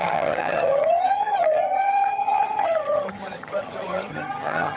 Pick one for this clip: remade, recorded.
remade